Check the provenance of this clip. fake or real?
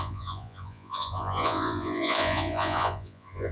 fake